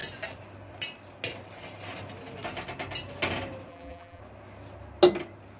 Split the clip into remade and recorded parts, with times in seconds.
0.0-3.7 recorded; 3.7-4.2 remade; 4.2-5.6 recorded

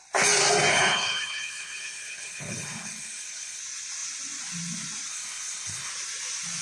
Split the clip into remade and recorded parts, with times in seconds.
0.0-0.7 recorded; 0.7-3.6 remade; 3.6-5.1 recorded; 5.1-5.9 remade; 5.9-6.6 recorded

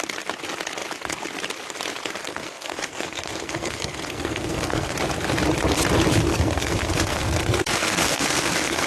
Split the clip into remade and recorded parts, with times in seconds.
0.0-2.2 recorded; 2.2-4.9 remade; 4.9-6.3 recorded; 6.3-8.9 remade